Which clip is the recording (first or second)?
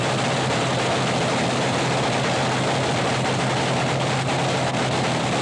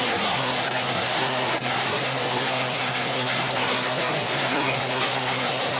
first